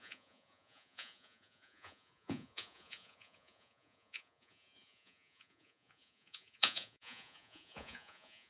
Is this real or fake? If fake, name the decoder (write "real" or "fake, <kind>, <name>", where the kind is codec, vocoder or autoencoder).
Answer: fake, vocoder, Vocos